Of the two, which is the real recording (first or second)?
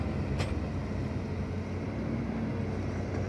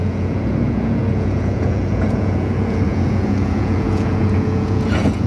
first